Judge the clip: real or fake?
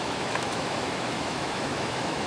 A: fake